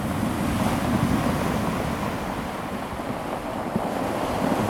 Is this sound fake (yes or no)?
no